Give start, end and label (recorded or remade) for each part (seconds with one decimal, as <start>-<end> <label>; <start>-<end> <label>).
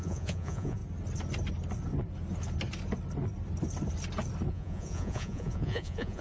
0.0-0.8 remade; 0.8-4.5 recorded; 4.5-6.2 remade